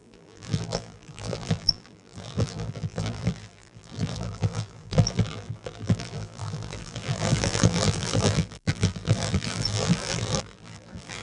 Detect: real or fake fake